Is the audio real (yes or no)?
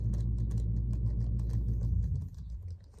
yes